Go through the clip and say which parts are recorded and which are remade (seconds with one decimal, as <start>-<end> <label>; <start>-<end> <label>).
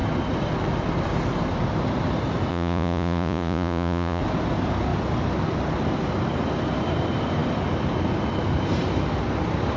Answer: 0.0-2.5 recorded; 2.5-4.2 remade; 4.2-9.8 recorded